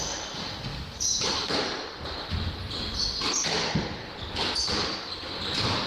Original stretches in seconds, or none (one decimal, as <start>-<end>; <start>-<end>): 0.0-0.7; 2.3-5.9